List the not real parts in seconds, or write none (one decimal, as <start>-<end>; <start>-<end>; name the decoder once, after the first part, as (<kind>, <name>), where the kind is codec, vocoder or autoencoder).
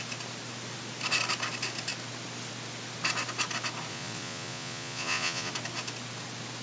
3.9-5.5 (vocoder, Vocos)